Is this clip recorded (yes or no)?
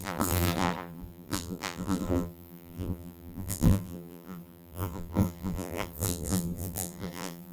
no